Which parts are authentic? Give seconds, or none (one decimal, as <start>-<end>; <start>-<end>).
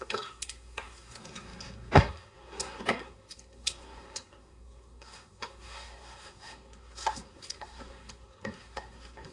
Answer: none